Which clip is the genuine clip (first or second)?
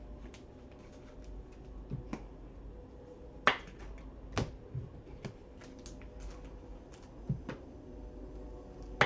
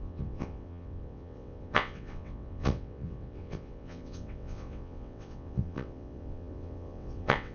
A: first